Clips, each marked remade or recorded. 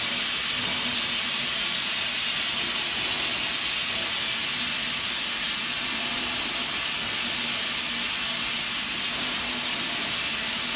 recorded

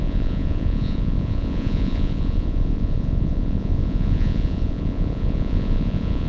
remade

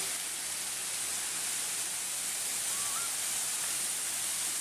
recorded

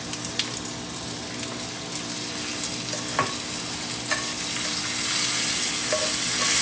recorded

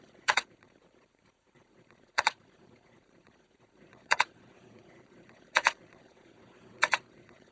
remade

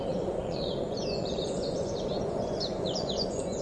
remade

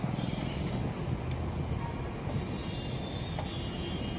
recorded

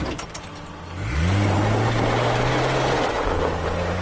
recorded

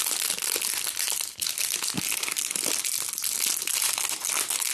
recorded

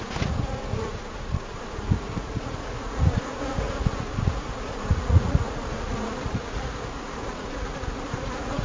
remade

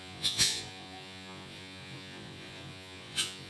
remade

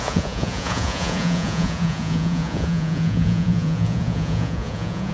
remade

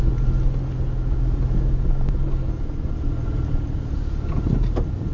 recorded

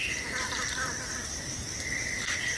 recorded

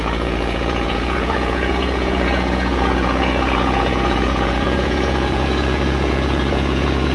remade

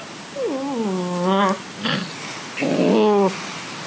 recorded